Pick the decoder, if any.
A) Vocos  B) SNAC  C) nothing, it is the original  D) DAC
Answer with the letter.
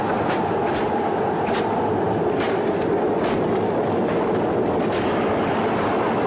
C